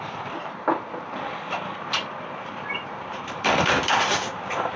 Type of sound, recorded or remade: remade